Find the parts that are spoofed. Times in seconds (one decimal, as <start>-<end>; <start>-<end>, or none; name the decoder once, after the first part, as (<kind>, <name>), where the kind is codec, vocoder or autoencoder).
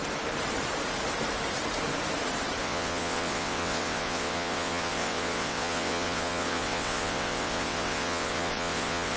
2.6-9.2 (vocoder, WaveNeXt)